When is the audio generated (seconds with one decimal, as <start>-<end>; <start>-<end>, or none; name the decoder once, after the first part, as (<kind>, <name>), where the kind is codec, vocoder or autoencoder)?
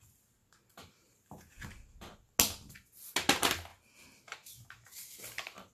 0.7-1.7 (vocoder, BigVGAN v2)